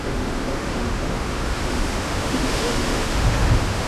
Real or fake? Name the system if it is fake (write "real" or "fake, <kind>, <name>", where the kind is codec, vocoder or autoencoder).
fake, autoencoder, DAC-VAE